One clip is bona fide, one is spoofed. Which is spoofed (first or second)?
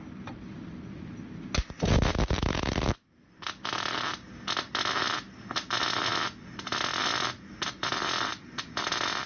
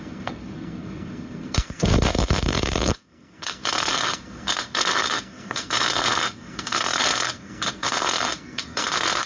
second